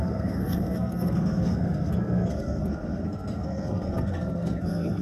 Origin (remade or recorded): remade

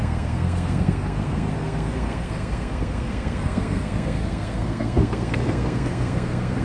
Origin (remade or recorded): remade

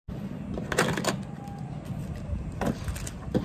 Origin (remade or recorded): recorded